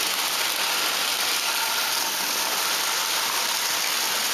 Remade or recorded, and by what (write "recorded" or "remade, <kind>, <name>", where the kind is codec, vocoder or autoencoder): recorded